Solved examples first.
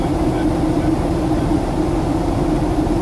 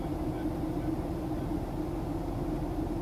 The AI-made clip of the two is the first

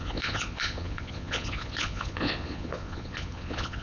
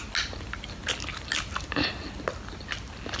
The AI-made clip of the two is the first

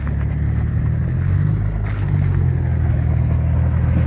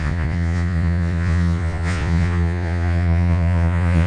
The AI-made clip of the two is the second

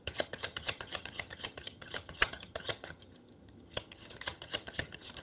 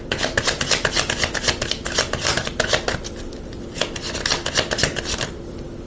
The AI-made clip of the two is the first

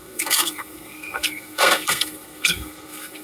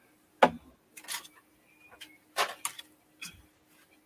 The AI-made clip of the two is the first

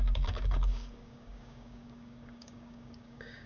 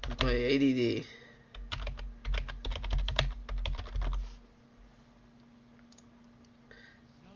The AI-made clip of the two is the first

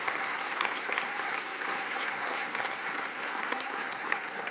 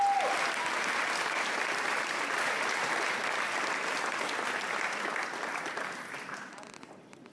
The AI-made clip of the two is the first